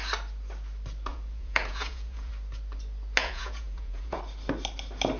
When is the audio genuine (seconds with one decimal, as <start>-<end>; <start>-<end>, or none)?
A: 0.0-1.1; 2.3-3.2; 4.2-5.2